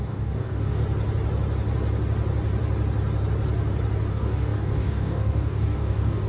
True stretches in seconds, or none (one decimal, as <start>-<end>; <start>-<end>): 0.8-4.1

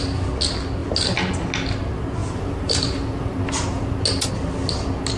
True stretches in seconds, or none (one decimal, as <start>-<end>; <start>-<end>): 0.0-2.2; 4.0-5.2